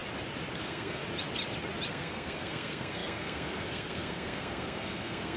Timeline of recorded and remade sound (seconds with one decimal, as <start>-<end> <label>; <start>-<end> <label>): 0.0-0.6 recorded; 0.6-1.0 remade; 1.0-1.9 recorded; 1.9-5.4 remade